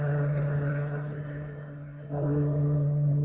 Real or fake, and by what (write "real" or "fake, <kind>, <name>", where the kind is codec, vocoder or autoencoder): fake, codec, SNAC